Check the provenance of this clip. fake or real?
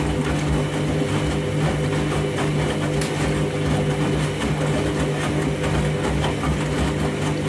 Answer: real